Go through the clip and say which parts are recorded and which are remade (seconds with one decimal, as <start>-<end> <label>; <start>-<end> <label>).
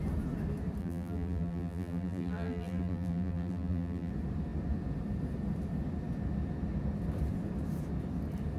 0.0-0.8 recorded; 0.8-4.1 remade; 4.1-8.6 recorded